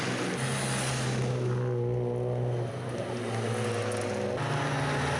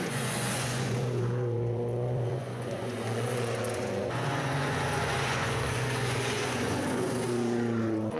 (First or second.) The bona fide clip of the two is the first